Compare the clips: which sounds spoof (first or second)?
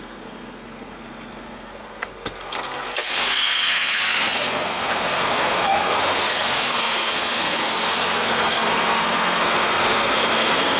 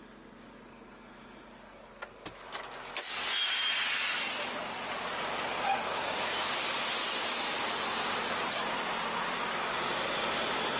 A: first